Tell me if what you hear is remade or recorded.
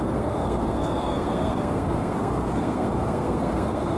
remade